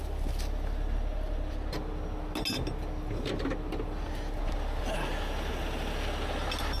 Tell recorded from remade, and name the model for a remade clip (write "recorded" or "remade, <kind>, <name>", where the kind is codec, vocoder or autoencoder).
recorded